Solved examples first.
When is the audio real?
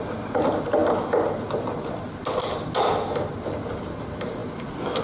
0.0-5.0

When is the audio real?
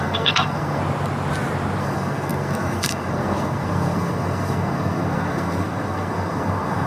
0.8-1.8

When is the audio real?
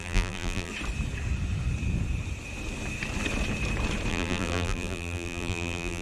0.7-4.1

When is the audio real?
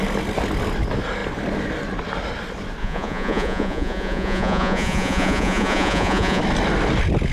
0.0-2.8; 6.4-7.3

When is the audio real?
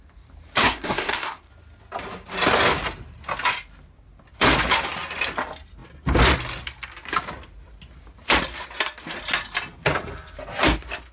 0.0-0.6; 1.5-11.1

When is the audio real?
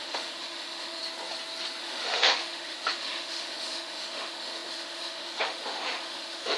1.0-1.8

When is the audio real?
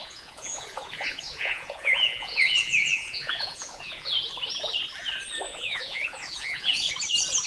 4.1-5.5; 6.9-7.5